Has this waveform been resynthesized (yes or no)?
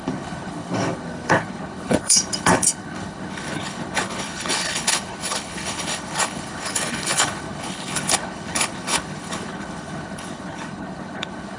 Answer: yes